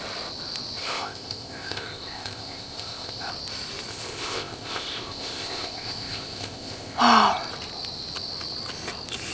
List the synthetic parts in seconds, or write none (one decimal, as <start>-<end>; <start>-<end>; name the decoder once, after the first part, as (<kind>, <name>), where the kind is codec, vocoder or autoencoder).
0.8-3.3 (codec, ZipCodec); 3.9-7.0